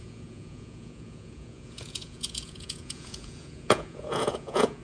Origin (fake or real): fake